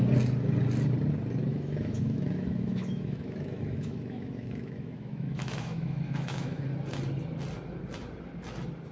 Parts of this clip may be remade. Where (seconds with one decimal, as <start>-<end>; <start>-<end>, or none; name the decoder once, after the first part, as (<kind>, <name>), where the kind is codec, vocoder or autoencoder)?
1.5-6.6 (autoencoder, DAC-VAE)